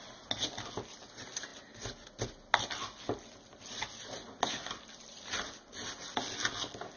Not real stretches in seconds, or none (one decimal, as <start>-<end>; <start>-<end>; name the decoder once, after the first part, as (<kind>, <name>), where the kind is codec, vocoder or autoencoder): none